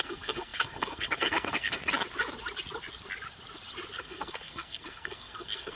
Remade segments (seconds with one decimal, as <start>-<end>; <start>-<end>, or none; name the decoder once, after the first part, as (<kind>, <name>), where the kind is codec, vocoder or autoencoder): 0.0-1.8 (codec, SNAC); 4.0-5.8